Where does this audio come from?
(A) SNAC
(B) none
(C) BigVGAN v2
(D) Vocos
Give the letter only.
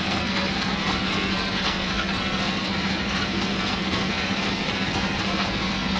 A